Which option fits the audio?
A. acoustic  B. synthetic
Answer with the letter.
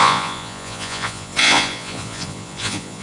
B